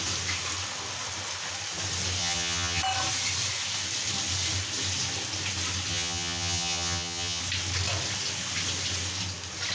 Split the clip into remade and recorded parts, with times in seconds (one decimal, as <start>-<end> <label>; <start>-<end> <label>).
0.0-2.2 recorded; 2.2-2.8 remade; 2.8-5.9 recorded; 5.9-7.4 remade; 7.4-9.7 recorded